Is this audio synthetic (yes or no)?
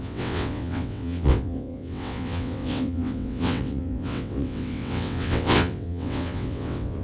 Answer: yes